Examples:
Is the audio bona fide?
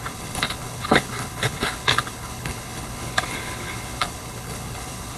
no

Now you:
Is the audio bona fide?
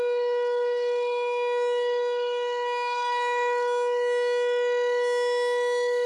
no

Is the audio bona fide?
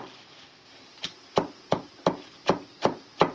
yes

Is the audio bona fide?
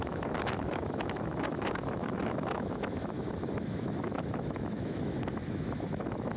no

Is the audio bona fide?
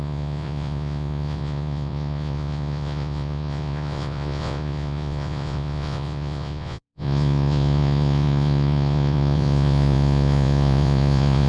no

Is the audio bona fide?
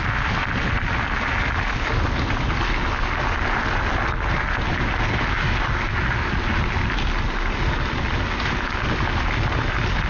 yes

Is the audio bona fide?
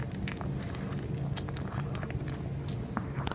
yes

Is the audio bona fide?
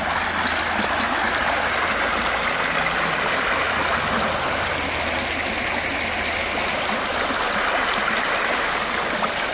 yes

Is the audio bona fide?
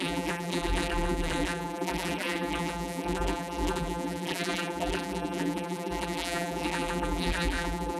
no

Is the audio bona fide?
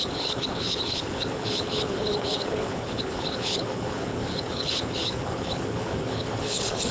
no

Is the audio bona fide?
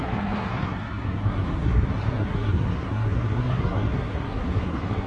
no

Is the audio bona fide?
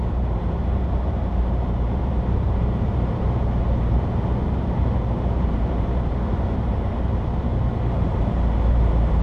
no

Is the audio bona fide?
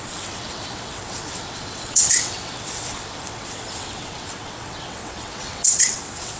no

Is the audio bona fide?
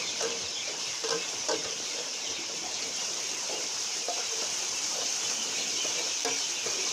no